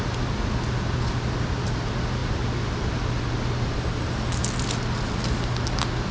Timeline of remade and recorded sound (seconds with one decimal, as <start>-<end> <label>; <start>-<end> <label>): 0.0-6.1 recorded

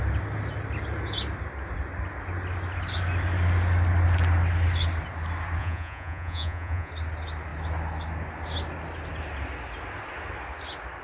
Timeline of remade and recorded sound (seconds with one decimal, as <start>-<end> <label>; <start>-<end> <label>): 0.0-5.6 recorded; 5.6-6.9 remade; 6.9-11.0 recorded

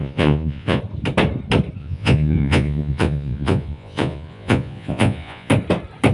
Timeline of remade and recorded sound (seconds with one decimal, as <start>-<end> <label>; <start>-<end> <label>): 0.0-0.8 remade; 0.8-1.8 recorded; 1.8-5.5 remade; 5.5-6.1 recorded

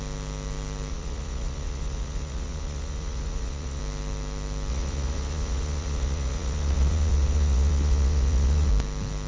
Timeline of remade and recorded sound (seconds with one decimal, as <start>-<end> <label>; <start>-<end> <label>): 0.0-0.9 recorded; 0.9-3.8 remade; 3.8-4.7 recorded; 4.7-8.7 remade; 8.7-9.3 recorded

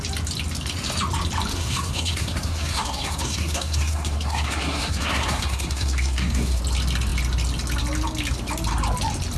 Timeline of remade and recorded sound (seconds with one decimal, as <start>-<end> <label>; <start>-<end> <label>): 0.0-1.5 recorded; 1.5-6.6 remade; 6.6-9.4 recorded